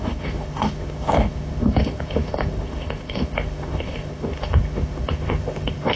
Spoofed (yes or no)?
yes